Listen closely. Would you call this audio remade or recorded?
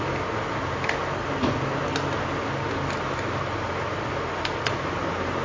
recorded